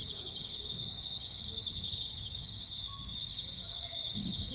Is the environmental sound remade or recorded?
remade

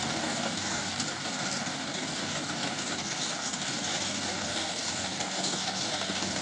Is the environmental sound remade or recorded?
remade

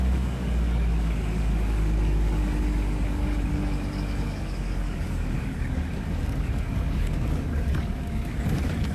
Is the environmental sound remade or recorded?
remade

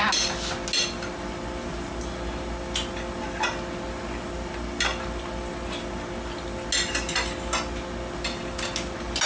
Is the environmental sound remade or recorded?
recorded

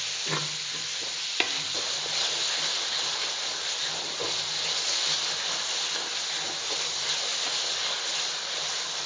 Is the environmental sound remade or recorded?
recorded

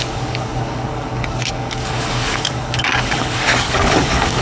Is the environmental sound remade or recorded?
remade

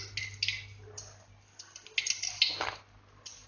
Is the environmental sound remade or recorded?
recorded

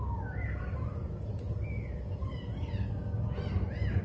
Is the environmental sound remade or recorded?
recorded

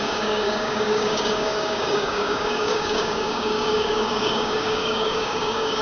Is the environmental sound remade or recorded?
remade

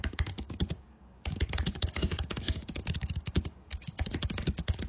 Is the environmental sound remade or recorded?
remade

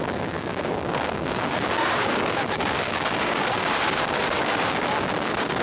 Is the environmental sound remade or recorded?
remade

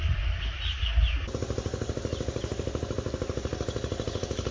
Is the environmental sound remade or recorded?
recorded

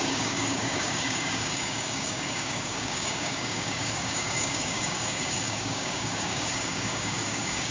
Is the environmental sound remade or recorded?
remade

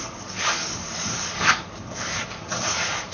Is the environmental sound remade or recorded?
remade